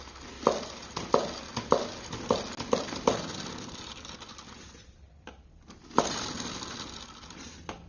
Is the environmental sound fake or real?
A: real